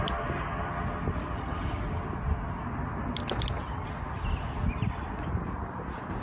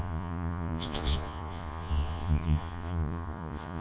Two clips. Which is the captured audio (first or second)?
first